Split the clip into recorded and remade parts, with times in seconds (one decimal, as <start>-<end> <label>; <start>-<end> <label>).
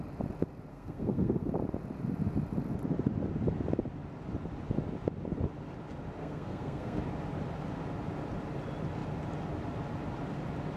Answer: 0.0-0.7 recorded; 0.7-1.5 remade; 1.5-6.2 recorded; 6.2-7.0 remade; 7.0-10.8 recorded